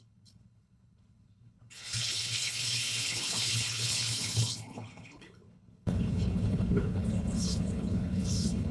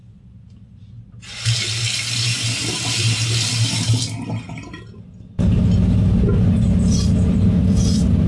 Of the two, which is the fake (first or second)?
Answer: first